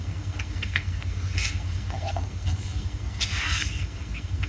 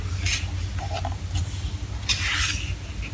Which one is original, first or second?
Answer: second